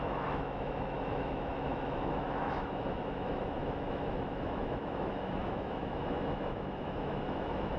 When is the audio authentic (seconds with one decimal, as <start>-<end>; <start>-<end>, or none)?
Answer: none